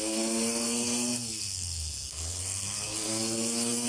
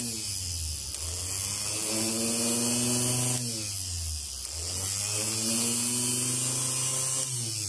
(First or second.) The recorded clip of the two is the second